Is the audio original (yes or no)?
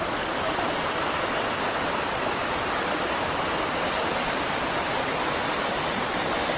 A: yes